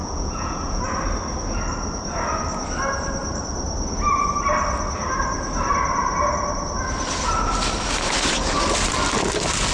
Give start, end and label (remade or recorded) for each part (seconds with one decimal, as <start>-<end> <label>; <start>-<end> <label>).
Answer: 0.0-0.8 remade; 0.8-9.7 recorded